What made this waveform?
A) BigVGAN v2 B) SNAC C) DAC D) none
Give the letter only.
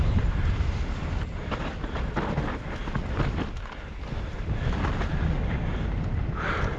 D